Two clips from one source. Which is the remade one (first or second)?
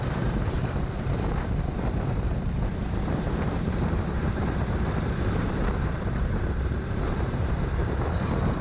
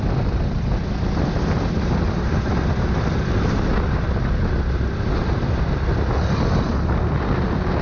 first